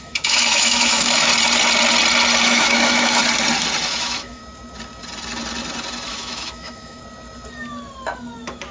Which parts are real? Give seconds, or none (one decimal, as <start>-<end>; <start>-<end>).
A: 1.3-2.4; 3.2-3.9; 4.4-6.1; 7.0-8.7